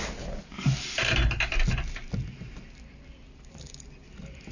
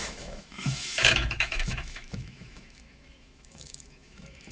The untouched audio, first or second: first